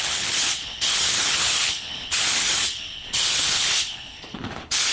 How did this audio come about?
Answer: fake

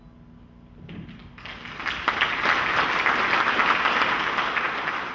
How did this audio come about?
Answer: real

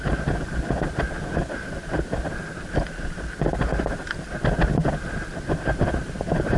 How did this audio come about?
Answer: real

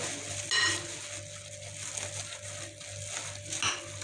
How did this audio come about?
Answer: real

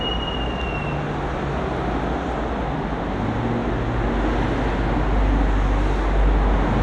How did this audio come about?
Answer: real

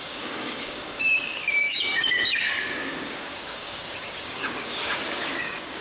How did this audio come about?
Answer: fake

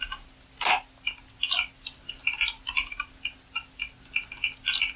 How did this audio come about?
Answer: real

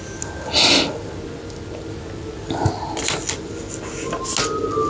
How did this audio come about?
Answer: real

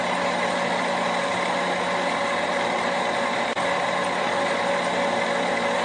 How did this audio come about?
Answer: real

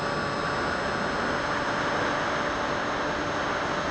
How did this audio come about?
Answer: real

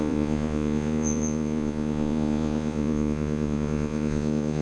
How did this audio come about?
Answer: fake